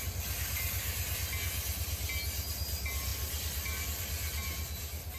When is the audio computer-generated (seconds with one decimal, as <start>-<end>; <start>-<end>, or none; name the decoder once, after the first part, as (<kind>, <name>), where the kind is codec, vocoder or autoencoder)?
0.0-0.8 (vocoder, BigVGAN v2); 2.5-4.4